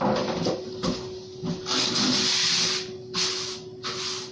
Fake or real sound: real